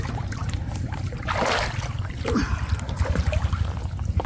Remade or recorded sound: recorded